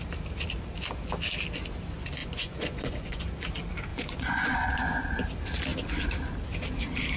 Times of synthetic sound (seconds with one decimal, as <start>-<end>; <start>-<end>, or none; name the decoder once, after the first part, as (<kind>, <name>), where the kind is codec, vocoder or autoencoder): 2.2-3.2 (vocoder, Vocos); 3.9-4.7